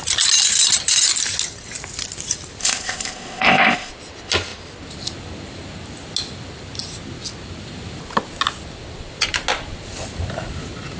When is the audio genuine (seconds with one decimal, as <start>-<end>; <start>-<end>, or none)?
0.0-2.6; 3.9-11.0